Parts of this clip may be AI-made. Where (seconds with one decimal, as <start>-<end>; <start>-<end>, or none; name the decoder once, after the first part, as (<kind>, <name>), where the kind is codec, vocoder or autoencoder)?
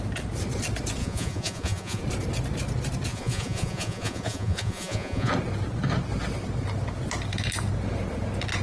1.0-2.0 (vocoder, Vocos); 3.1-5.3